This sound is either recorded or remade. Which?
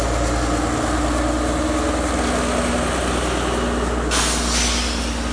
recorded